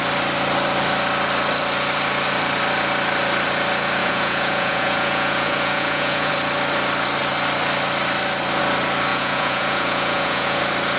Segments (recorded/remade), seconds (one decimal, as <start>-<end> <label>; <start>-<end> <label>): 0.0-4.0 recorded; 4.0-6.3 remade; 6.3-9.1 recorded; 9.1-10.6 remade; 10.6-11.0 recorded